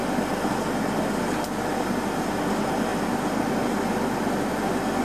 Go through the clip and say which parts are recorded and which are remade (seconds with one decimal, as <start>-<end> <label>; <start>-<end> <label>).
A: 0.0-5.0 recorded